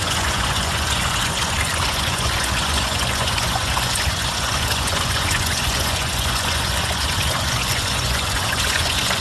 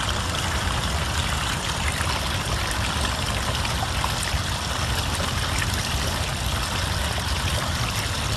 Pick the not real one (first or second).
first